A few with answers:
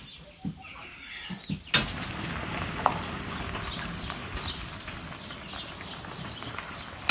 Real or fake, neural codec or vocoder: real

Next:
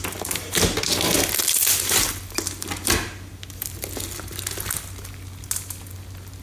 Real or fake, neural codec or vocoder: real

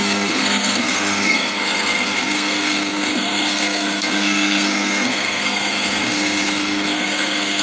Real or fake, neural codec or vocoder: fake, codec, SNAC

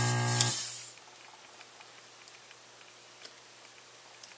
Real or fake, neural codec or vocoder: fake, vocoder, BigVGAN v2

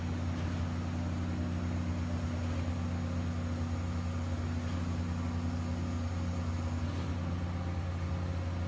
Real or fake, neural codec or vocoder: real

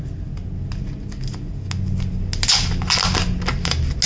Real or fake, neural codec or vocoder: real